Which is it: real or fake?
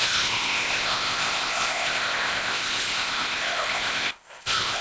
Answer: fake